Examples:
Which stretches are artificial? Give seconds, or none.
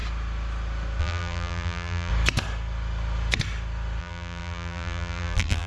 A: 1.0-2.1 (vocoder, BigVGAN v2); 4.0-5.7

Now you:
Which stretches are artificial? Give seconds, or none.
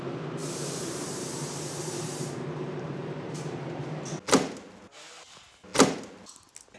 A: 0.4-3.6 (vocoder, BigVGAN v2)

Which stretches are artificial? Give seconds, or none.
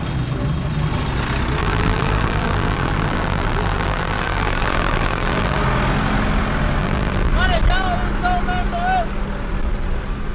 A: 1.6-5.6 (vocoder, BigVGAN v2); 6.8-7.3